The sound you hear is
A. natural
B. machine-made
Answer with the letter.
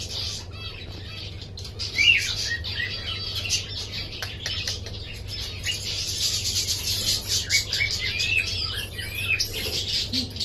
A